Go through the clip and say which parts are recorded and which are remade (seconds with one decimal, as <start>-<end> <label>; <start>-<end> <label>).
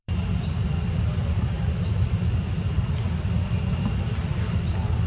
0.0-5.1 remade